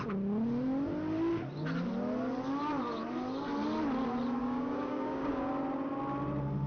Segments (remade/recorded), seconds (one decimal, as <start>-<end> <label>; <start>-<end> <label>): 0.0-4.4 recorded; 4.4-5.5 remade; 5.5-6.7 recorded